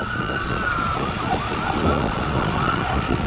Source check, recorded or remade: remade